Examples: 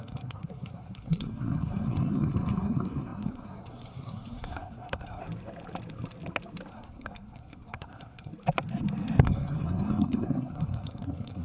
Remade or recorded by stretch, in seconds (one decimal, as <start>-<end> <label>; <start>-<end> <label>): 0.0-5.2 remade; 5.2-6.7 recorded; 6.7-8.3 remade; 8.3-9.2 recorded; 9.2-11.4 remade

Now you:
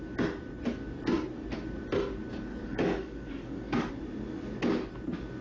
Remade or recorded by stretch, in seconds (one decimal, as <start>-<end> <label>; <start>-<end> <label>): 0.0-2.5 recorded; 2.5-3.9 remade; 3.9-5.4 recorded

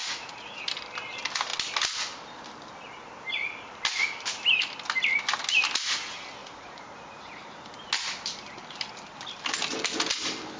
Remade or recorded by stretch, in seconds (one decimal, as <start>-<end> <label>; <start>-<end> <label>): 0.0-0.6 remade; 0.6-6.4 recorded; 6.4-7.3 remade; 7.3-10.6 recorded

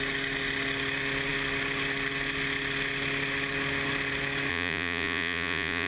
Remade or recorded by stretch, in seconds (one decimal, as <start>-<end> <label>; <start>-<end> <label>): 0.0-4.5 recorded; 4.5-5.9 remade

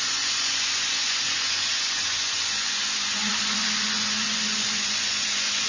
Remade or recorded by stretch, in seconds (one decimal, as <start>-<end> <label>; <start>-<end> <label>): 0.0-5.7 remade

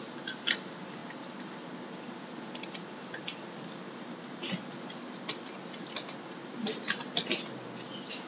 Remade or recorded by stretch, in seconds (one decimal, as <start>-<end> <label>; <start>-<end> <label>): 0.0-8.3 recorded